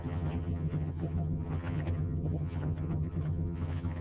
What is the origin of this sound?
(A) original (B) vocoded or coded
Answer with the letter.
B